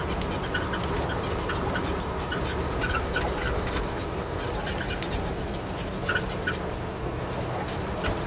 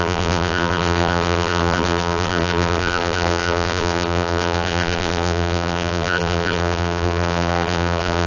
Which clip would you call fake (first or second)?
second